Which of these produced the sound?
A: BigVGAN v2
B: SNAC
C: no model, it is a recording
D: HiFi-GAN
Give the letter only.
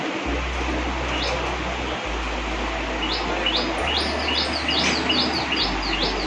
C